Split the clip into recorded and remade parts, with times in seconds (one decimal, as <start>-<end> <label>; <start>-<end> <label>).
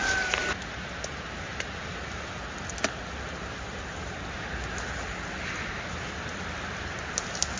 0.0-7.6 recorded